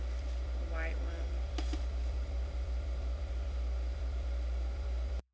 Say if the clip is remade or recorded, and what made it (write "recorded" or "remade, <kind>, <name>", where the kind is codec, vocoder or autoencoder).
remade, vocoder, BigVGAN v2